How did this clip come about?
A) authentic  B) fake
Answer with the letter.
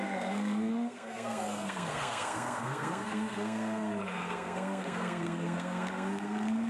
B